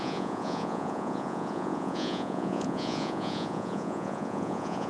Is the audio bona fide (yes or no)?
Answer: no